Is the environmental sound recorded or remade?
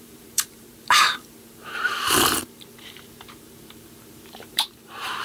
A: remade